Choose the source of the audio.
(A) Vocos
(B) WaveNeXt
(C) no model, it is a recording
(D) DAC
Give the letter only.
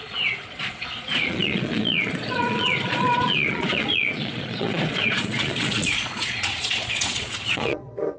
A